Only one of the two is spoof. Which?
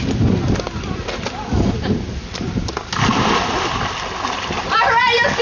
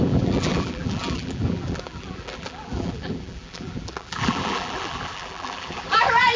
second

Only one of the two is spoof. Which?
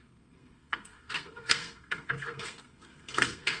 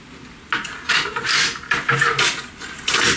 first